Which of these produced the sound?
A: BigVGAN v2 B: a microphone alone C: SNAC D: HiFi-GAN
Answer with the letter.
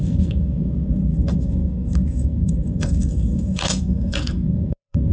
C